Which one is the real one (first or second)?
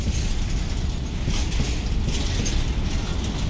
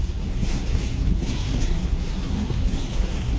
first